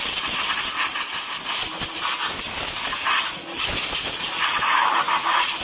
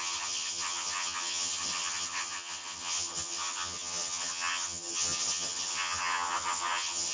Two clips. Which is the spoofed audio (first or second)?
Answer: second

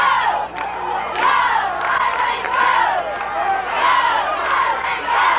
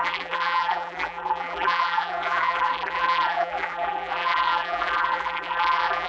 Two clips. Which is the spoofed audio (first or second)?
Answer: second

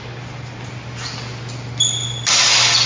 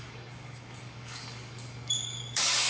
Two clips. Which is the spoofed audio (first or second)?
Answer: second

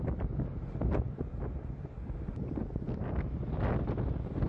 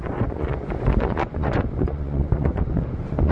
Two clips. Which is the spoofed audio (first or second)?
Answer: second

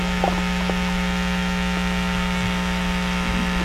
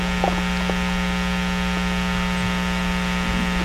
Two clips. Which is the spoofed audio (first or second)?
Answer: first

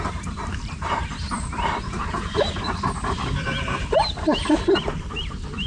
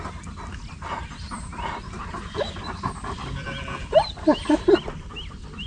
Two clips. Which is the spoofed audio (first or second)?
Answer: first